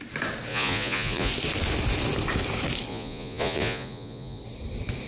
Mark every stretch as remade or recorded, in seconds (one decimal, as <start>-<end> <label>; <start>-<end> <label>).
0.0-0.5 recorded; 0.5-1.3 remade; 1.3-2.9 recorded; 2.9-4.4 remade; 4.4-5.1 recorded